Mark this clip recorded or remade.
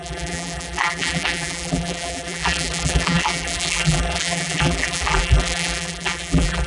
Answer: remade